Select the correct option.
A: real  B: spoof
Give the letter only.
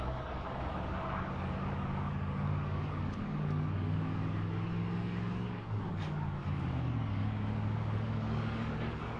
B